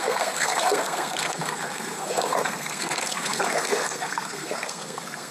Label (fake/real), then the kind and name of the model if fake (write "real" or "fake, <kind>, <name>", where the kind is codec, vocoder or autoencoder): fake, codec, SNAC